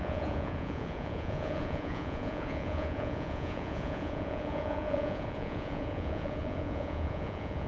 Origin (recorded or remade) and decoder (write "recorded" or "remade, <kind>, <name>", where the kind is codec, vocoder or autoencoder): remade, vocoder, Vocos